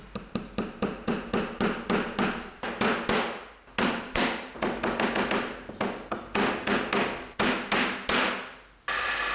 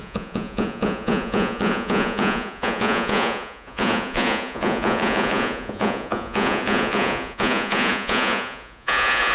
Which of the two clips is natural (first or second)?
first